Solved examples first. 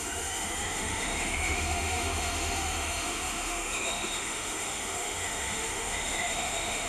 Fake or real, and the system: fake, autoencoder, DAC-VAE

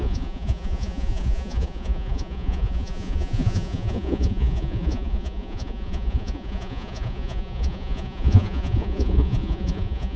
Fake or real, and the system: fake, vocoder, Vocos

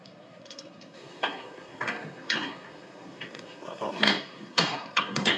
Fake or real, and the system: fake, codec, SNAC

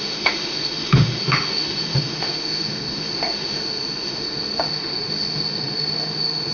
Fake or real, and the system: fake, autoencoder, DAC-VAE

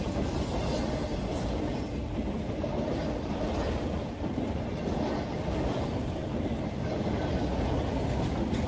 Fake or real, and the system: real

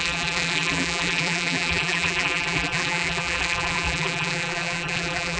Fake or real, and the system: fake, vocoder, BigVGAN v2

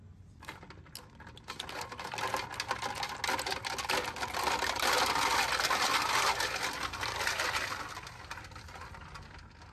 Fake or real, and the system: real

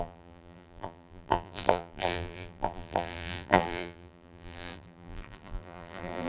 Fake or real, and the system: fake, vocoder, BigVGAN v2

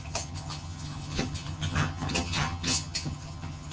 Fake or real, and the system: fake, vocoder, HiFi-GAN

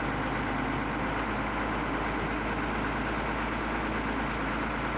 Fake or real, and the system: real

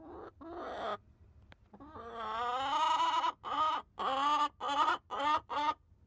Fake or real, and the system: real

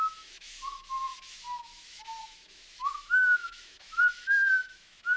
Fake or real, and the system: fake, autoencoder, DAC-VAE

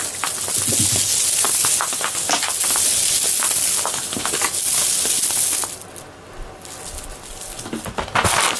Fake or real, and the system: real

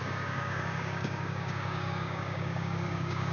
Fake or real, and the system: fake, codec, DAC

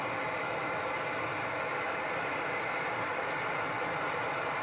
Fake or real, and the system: real